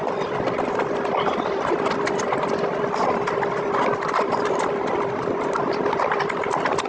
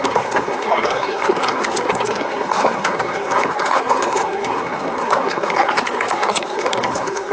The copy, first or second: second